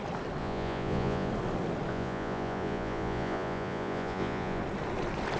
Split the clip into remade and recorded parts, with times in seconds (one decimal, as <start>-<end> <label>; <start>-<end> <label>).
0.0-0.4 recorded; 0.4-1.3 remade; 1.3-1.9 recorded; 1.9-4.6 remade; 4.6-5.4 recorded